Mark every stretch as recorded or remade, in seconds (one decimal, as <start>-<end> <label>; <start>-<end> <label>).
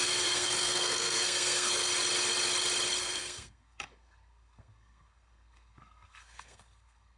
0.0-1.9 remade; 1.9-3.0 recorded; 3.0-7.2 remade